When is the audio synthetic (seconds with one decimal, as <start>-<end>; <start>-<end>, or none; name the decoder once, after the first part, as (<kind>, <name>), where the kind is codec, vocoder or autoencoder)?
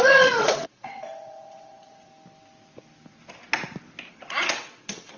0.0-2.1 (vocoder, WaveNeXt); 4.1-5.2